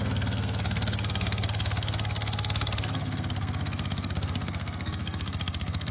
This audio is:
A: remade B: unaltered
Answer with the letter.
A